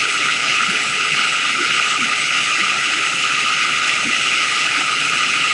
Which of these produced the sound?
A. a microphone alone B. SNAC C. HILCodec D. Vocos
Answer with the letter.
C